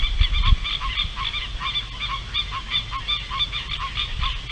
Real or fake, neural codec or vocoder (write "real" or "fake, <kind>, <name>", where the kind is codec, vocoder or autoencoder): real